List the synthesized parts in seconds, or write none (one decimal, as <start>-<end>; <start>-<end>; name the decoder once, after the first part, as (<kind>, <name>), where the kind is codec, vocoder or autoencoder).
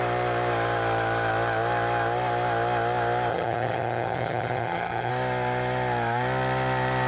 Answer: 3.3-5.1 (vocoder, HiFi-GAN)